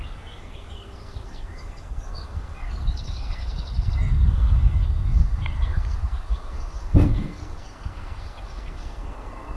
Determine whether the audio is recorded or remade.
remade